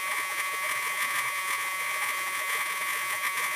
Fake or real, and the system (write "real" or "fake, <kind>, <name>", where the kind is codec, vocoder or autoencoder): fake, vocoder, Vocos